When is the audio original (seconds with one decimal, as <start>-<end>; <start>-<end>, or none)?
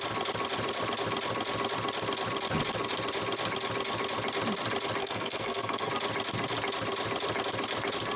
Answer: 0.0-5.0; 5.9-8.2